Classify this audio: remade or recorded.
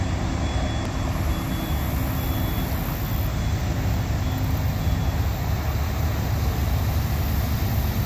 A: recorded